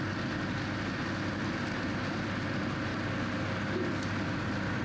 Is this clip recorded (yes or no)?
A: yes